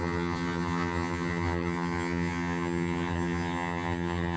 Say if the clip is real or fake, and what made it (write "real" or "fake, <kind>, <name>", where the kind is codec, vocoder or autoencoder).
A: fake, vocoder, HiFi-GAN